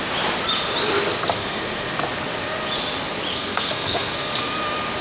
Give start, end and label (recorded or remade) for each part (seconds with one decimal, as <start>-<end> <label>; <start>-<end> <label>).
0.0-1.4 recorded; 1.4-1.9 remade; 1.9-3.3 recorded; 3.3-4.3 remade; 4.3-5.0 recorded